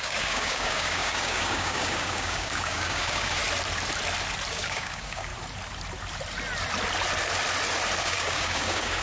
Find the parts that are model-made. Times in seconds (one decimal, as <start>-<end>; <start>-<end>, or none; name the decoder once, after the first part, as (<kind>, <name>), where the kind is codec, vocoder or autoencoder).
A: 0.0-3.4 (codec, DAC); 4.5-5.3; 8.0-9.0